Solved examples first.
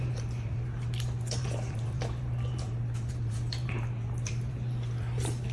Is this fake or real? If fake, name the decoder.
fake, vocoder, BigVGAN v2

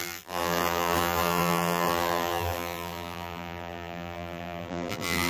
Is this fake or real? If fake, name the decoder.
fake, vocoder, BigVGAN v2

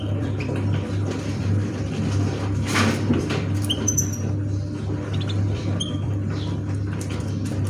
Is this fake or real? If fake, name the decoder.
fake, vocoder, BigVGAN v2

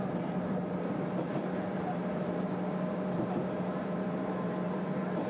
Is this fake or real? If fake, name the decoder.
fake, vocoder, BigVGAN v2